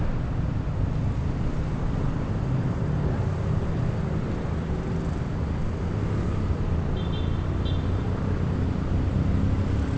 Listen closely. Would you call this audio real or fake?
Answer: real